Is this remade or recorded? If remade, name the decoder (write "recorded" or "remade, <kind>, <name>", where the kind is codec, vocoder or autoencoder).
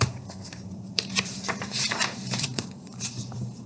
remade, vocoder, BigVGAN v2